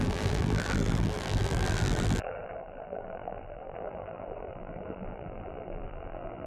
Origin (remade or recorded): remade